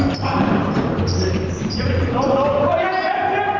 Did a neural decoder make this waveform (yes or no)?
no